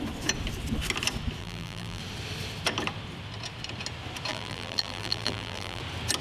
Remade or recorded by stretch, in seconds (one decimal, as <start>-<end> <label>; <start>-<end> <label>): 0.0-1.4 recorded; 1.4-2.0 remade; 2.0-4.3 recorded; 4.3-5.8 remade; 5.8-6.2 recorded